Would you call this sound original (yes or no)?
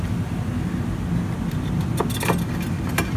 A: yes